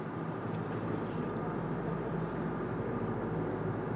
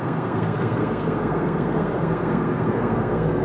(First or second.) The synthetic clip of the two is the second